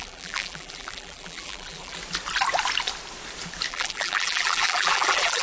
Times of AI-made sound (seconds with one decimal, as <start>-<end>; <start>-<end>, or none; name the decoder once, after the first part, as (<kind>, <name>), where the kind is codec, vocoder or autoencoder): 0.0-2.0 (vocoder, BigVGAN v2); 3.7-5.4